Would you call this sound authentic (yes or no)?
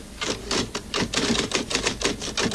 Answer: yes